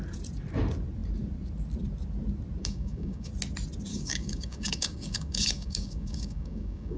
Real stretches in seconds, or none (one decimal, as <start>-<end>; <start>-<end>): 0.0-2.6; 3.3-3.9